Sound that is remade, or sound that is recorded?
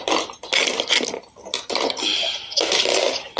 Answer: recorded